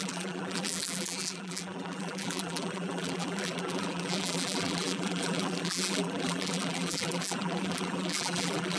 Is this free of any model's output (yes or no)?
no